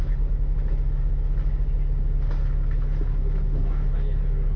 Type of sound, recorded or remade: recorded